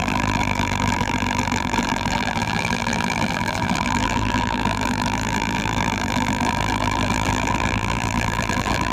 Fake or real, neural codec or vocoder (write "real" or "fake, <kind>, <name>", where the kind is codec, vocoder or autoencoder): fake, vocoder, BigVGAN v2